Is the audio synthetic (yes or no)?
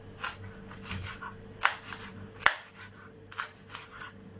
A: no